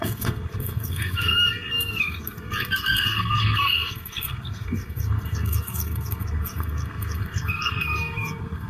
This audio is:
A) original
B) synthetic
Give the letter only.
B